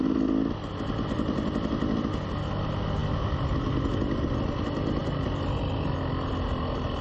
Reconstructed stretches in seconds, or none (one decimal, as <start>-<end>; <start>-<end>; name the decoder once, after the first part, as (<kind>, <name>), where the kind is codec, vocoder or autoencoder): none